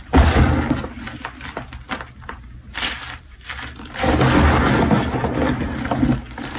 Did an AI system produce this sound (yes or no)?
no